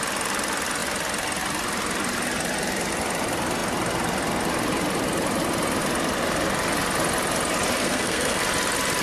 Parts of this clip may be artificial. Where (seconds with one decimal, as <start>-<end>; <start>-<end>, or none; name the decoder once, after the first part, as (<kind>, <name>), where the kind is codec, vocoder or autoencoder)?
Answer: 7.8-8.4 (codec, SNAC)